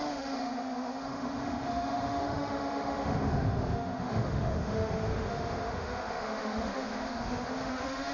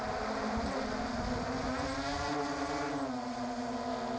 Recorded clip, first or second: second